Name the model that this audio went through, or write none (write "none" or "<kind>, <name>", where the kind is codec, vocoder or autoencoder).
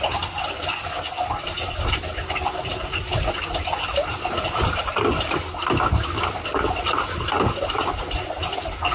none